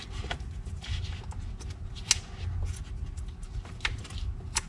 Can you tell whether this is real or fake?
real